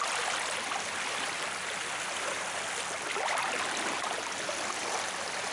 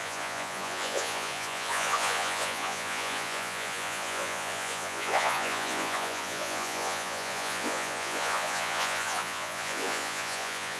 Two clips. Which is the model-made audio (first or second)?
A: second